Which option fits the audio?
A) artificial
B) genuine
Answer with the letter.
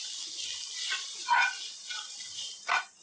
B